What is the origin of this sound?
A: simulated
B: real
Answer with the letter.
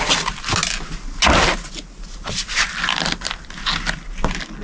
B